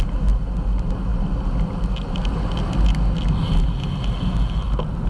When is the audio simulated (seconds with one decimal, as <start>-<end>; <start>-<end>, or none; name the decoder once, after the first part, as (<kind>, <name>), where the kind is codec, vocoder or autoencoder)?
none